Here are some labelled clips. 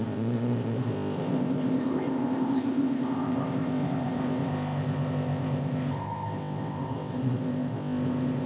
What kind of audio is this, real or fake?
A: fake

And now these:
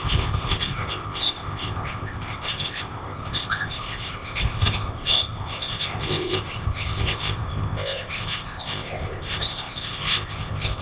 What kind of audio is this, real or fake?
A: fake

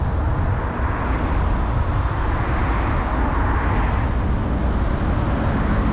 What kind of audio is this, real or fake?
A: real